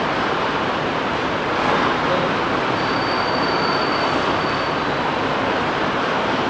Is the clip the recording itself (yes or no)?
yes